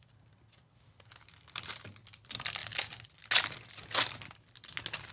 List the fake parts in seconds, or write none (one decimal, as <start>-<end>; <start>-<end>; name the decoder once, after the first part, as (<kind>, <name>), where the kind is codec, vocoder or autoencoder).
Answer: none